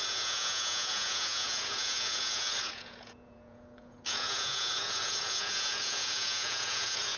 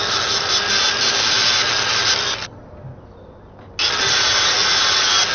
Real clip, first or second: second